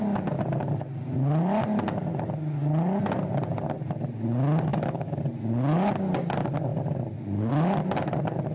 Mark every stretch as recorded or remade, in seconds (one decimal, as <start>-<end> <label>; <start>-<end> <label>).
0.0-4.7 recorded; 4.7-5.2 remade; 5.2-8.5 recorded